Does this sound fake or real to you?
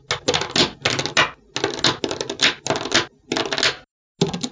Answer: real